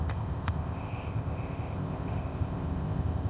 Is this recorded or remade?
remade